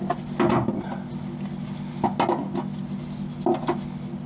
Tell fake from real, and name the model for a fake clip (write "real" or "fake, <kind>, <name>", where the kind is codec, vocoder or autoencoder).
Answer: real